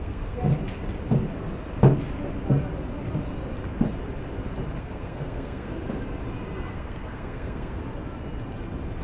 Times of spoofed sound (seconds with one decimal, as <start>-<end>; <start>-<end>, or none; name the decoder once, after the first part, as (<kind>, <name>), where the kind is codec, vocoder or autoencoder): 0.0-0.5 (codec, SNAC); 4.8-5.7; 6.7-7.8